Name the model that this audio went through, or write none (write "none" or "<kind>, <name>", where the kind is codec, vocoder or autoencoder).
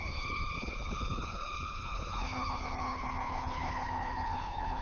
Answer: codec, HILCodec